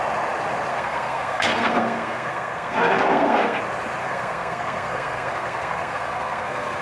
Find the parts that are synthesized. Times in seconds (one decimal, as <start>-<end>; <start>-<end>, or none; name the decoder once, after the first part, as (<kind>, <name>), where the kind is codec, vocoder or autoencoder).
0.7-3.6 (codec, SNAC); 4.0-6.8